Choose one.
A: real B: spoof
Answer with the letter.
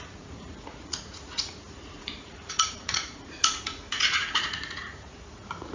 B